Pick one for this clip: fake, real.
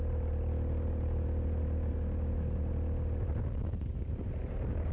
real